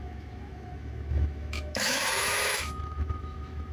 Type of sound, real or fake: fake